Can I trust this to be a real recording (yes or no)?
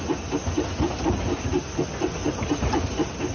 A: yes